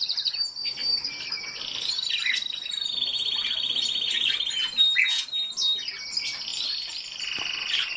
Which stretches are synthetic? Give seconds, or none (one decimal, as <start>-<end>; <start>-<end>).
none